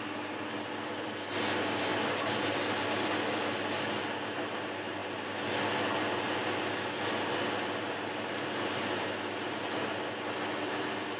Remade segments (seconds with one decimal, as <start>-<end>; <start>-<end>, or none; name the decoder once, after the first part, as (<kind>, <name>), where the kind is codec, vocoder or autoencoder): none